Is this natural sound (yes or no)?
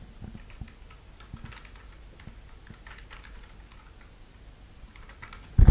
yes